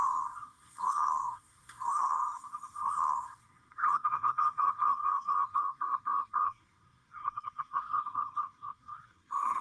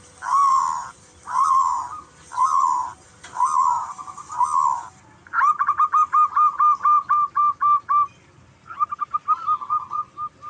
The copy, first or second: first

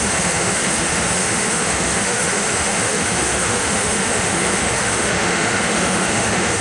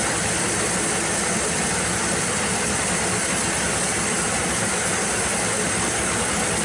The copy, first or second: first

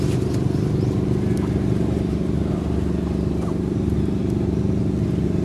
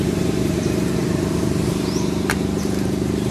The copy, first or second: second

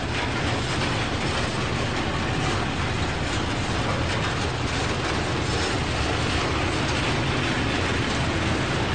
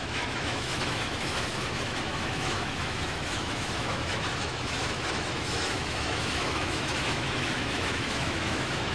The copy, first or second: second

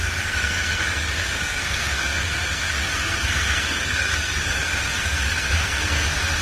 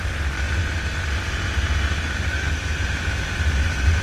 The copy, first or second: first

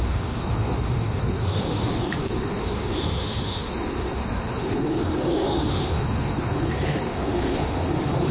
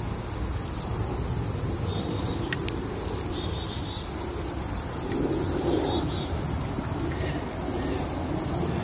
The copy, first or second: first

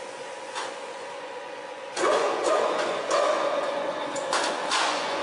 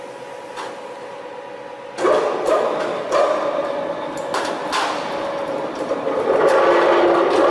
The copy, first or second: first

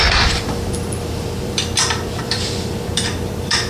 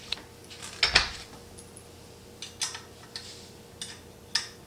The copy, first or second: first